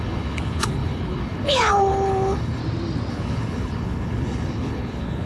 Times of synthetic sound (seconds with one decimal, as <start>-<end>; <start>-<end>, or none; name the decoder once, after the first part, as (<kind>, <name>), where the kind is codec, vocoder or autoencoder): 0.0-2.6 (codec, HILCodec); 3.1-5.3